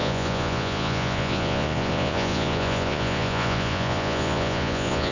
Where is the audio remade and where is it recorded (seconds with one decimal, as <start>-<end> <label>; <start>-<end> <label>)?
0.0-5.1 remade